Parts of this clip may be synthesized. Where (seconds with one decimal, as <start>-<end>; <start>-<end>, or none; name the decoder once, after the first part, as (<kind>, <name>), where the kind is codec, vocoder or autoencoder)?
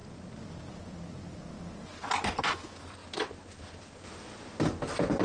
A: none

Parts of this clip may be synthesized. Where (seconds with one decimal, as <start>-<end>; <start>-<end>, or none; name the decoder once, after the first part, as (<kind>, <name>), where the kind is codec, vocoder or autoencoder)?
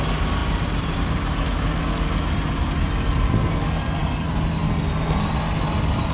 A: 0.4-1.8 (vocoder, BigVGAN v2)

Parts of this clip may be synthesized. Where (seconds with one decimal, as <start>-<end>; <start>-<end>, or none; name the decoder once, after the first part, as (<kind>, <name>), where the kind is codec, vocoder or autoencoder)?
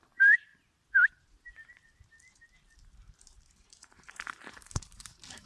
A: 0.0-0.5 (vocoder, BigVGAN v2); 3.8-5.5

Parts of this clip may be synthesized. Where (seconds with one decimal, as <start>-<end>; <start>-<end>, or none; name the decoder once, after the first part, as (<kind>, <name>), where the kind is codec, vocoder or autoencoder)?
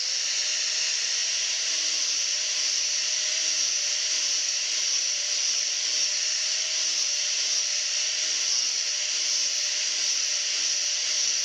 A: 1.2-5.6 (vocoder, BigVGAN v2); 6.2-8.5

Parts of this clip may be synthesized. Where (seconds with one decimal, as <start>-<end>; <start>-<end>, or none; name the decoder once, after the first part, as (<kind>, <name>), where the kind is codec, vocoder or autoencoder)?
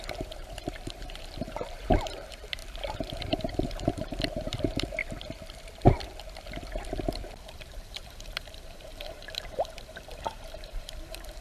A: 0.0-5.0 (vocoder, BigVGAN v2); 7.5-11.4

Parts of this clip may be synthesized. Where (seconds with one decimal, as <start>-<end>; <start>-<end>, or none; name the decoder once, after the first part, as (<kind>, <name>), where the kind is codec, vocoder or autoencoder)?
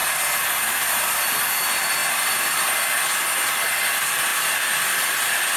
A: none